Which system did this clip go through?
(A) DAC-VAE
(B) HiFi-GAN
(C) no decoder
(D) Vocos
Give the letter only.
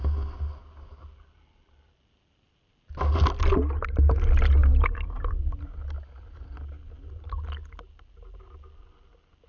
C